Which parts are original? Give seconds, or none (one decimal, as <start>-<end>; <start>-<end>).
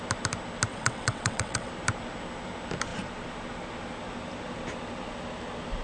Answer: 0.0-0.7; 1.7-5.8